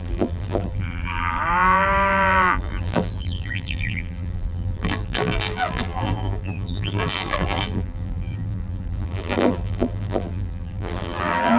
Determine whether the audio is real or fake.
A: fake